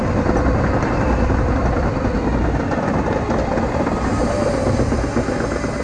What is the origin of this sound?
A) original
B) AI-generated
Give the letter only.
A